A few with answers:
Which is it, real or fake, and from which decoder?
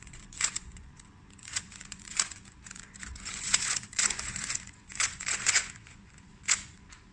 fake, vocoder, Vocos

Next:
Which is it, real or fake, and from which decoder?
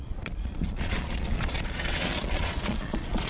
fake, vocoder, Vocos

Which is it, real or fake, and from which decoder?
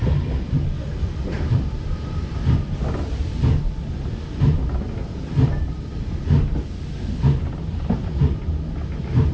real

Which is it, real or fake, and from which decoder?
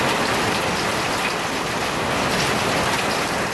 real